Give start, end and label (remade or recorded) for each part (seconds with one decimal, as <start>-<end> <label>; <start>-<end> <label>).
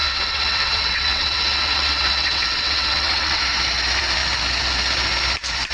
0.0-3.4 remade; 3.4-5.7 recorded